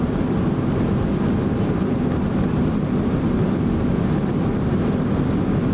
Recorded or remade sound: recorded